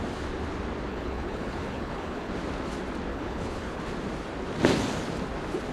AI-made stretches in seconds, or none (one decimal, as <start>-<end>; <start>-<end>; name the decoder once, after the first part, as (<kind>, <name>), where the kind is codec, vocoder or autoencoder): 0.9-2.3 (codec, HILCodec); 3.1-3.8